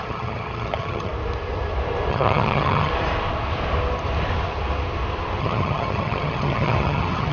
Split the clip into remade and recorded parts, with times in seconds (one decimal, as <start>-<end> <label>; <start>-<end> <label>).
0.0-1.1 remade; 1.1-2.1 recorded; 2.1-2.9 remade; 2.9-5.4 recorded; 5.4-7.3 remade